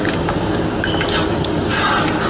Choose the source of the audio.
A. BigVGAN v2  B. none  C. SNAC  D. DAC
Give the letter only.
B